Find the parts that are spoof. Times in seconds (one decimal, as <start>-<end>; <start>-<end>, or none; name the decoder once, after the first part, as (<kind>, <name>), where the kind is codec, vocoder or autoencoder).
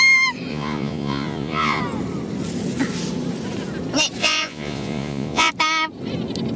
0.5-1.8 (vocoder, Vocos); 4.2-5.5